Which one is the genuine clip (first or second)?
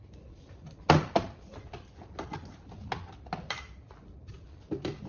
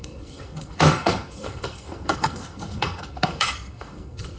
first